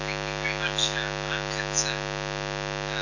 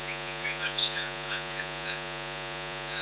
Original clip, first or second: first